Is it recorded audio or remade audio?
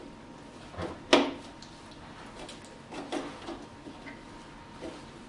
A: recorded